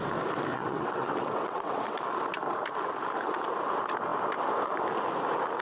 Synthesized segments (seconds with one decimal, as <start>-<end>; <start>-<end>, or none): 0.5-2.0